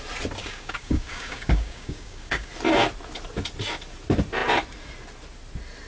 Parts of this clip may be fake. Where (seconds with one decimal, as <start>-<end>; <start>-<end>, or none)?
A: 0.4-2.5